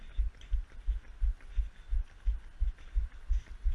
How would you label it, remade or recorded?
recorded